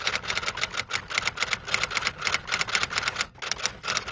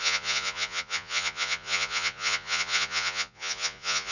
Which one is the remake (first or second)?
second